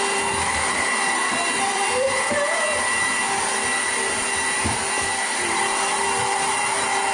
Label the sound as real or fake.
fake